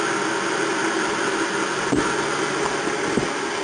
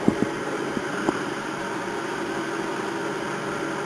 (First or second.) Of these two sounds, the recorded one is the first